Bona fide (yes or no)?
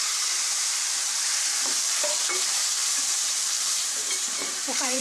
no